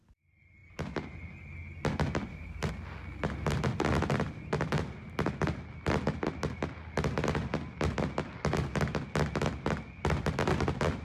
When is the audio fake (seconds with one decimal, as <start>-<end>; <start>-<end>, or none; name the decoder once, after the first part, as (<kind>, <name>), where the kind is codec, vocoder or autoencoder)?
none